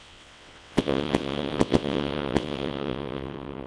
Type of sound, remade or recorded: remade